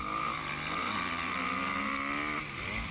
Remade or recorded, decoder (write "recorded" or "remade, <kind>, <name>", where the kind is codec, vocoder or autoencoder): recorded